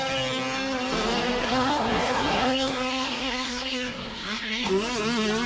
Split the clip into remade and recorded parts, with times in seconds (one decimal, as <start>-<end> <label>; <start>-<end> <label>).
0.0-1.4 recorded; 1.4-4.7 remade; 4.7-5.5 recorded